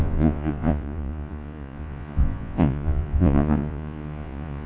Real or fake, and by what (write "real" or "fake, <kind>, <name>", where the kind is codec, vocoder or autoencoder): fake, vocoder, Vocos